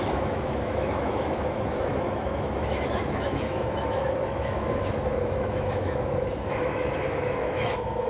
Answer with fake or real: fake